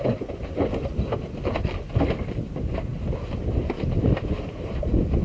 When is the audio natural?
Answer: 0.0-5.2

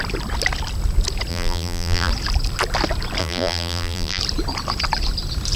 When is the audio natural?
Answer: 0.0-1.3; 2.1-3.2; 4.2-5.6

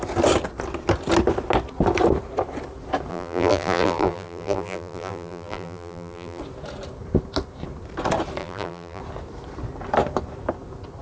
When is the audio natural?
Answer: 0.0-3.1; 6.4-8.4; 9.0-11.0

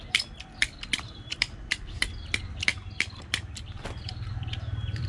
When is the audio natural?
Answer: none

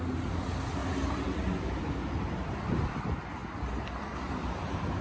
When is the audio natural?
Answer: 0.8-1.6; 3.4-4.0

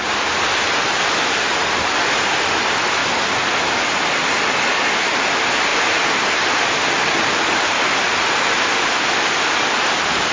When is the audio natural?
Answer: 0.0-10.3

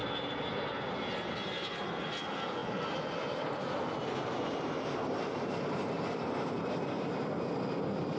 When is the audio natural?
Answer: 0.0-2.6; 4.2-8.2

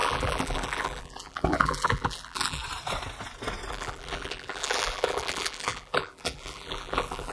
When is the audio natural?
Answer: 2.6-3.7